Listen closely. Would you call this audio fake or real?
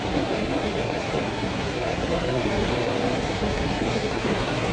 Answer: fake